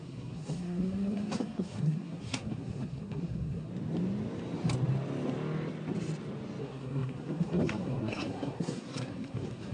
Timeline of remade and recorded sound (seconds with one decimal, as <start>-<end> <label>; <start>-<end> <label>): 0.0-3.7 remade; 3.7-6.6 recorded; 6.6-9.7 remade